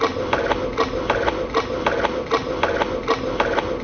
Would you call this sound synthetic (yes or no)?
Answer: no